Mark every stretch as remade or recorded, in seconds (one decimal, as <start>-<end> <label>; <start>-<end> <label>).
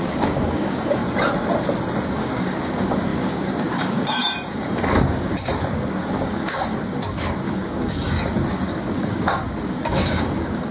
0.0-1.0 remade; 1.0-2.1 recorded; 2.1-10.7 remade